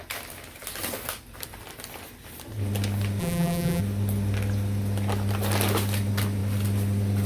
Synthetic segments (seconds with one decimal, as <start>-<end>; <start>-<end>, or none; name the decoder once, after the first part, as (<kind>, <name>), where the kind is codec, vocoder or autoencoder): 3.2-3.8 (vocoder, BigVGAN v2)